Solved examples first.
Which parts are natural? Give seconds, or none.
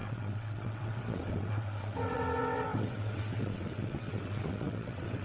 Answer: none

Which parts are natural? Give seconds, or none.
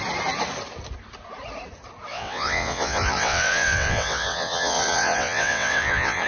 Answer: 0.0-2.1